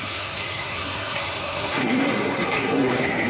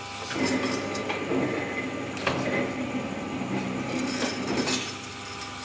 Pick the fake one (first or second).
first